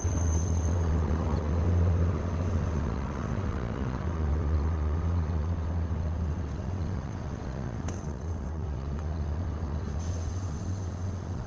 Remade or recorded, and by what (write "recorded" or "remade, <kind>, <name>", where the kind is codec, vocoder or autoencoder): remade, vocoder, WaveNeXt